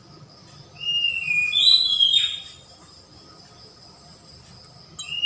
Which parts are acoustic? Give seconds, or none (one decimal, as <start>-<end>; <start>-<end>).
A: 0.0-5.3